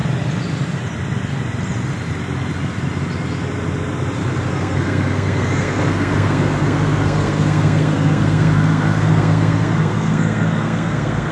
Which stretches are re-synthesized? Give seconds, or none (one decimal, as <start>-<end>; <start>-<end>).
4.5-11.3